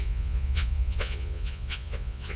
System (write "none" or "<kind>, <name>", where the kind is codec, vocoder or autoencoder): vocoder, Vocos